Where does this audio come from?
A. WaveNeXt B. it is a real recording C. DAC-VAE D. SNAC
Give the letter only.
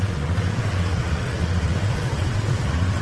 A